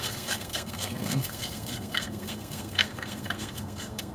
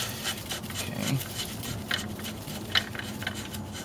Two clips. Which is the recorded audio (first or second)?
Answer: second